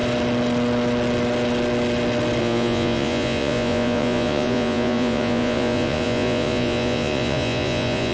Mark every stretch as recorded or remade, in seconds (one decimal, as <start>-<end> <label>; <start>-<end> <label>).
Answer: 0.0-2.4 recorded; 2.4-8.1 remade